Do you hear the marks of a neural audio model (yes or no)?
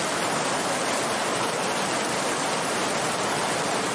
no